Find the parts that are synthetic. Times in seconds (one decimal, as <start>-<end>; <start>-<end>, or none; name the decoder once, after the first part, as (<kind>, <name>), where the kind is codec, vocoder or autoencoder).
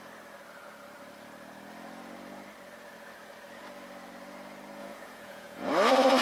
4.8-5.7 (vocoder, Vocos)